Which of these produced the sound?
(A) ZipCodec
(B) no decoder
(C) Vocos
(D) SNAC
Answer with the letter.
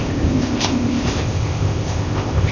A